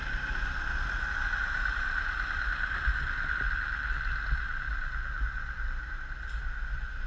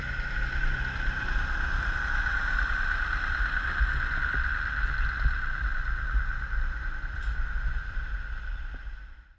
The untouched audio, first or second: first